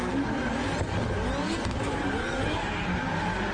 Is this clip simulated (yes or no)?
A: no